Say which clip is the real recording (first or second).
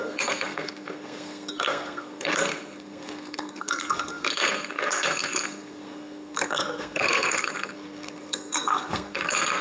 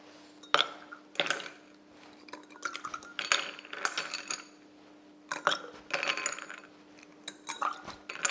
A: second